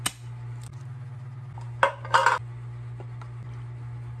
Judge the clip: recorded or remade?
recorded